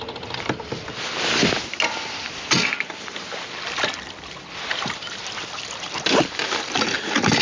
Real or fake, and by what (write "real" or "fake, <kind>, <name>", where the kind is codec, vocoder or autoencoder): real